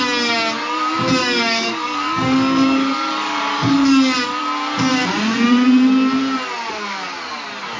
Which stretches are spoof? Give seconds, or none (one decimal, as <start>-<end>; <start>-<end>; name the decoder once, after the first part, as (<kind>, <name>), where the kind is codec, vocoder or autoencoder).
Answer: 1.2-4.4 (codec, DAC)